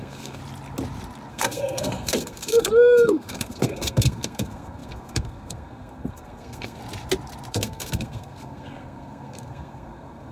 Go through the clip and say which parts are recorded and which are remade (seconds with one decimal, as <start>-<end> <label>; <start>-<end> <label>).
0.0-0.4 remade; 0.4-1.3 recorded; 1.3-6.8 remade; 6.8-7.5 recorded; 7.5-10.3 remade